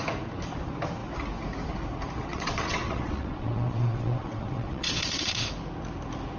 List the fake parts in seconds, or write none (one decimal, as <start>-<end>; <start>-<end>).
2.3-5.5